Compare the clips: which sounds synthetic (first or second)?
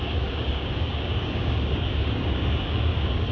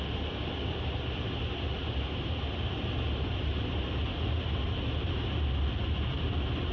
first